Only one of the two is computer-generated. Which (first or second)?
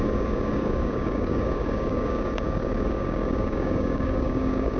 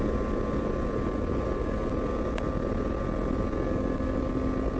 first